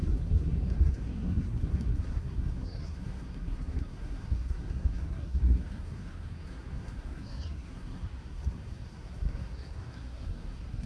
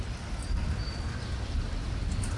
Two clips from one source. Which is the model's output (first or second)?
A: first